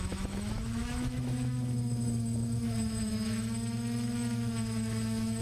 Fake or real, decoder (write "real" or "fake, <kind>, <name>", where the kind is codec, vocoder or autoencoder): fake, autoencoder, DAC-VAE